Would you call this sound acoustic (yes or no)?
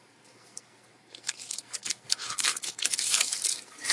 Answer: no